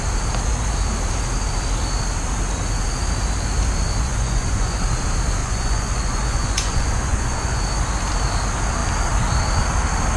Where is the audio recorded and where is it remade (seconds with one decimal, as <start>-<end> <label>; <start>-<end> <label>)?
0.0-4.0 recorded; 4.0-4.8 remade; 4.8-5.4 recorded; 5.4-7.6 remade; 7.6-10.2 recorded